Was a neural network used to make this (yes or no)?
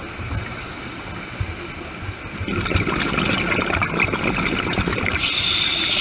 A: no